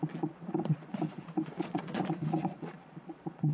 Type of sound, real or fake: fake